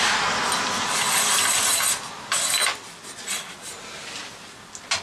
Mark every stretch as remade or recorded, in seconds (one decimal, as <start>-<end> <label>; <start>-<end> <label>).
0.0-5.0 recorded

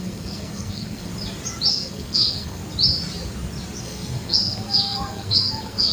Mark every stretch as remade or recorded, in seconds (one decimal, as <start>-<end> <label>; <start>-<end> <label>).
0.0-1.1 remade; 1.1-1.7 recorded; 1.7-2.6 remade; 2.6-3.8 recorded; 3.8-5.9 remade

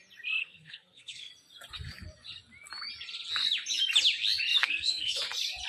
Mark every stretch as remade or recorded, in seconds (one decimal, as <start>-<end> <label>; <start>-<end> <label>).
0.0-0.4 recorded; 0.4-1.3 remade; 1.3-4.6 recorded; 4.6-5.2 remade; 5.2-5.7 recorded

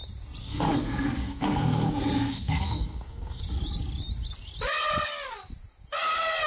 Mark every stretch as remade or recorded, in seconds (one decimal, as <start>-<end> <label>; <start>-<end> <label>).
0.0-0.4 recorded; 0.4-3.4 remade; 3.4-6.5 recorded

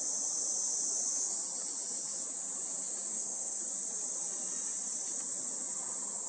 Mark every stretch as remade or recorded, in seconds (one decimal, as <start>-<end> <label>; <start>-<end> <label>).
0.0-3.1 recorded; 3.1-3.6 remade; 3.6-6.3 recorded